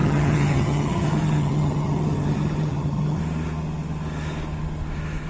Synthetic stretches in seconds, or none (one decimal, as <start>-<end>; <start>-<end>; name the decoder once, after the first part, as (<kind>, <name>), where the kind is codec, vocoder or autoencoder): 0.0-3.2 (vocoder, HiFi-GAN)